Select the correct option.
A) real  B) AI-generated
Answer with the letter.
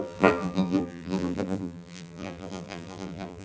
B